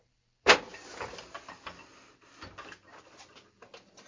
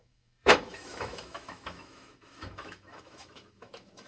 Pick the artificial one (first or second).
second